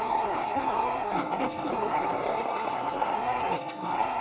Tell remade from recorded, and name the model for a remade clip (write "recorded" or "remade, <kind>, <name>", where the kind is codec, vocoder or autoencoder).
remade, codec, SNAC